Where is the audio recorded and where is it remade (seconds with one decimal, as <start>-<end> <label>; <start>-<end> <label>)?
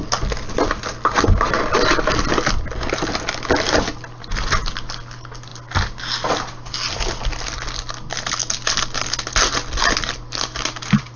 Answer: 0.0-11.2 recorded